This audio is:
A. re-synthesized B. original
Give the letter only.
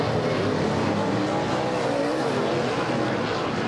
B